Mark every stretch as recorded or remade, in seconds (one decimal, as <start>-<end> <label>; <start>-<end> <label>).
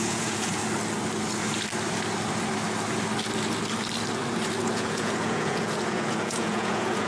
0.0-0.6 remade; 0.6-4.6 recorded; 4.6-7.1 remade